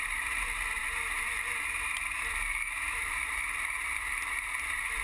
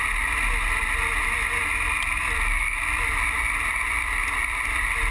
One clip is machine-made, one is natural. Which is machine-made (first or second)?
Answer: first